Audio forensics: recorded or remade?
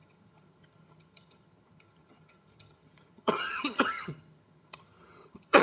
remade